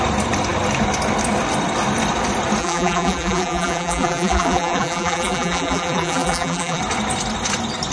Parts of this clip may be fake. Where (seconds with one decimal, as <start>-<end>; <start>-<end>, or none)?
2.6-6.8